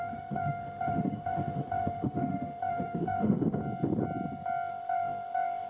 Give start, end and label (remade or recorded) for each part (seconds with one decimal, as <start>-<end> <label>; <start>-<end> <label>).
0.0-3.6 remade; 3.6-4.7 recorded; 4.7-5.7 remade